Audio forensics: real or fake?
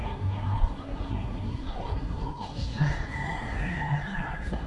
fake